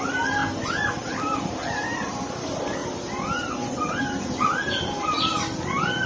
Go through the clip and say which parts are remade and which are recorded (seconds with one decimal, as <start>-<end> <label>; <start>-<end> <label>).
0.0-6.1 recorded